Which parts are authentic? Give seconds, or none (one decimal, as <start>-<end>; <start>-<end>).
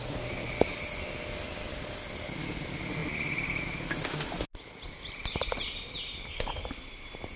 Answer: 0.0-7.4